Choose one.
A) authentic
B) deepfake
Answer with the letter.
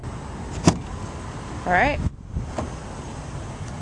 A